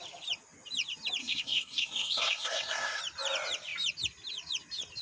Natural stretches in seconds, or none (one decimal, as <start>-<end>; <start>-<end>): 0.0-1.2; 3.0-5.0